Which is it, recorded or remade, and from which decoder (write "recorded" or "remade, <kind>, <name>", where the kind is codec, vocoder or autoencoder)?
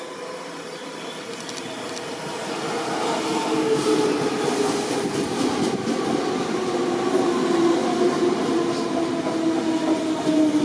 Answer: recorded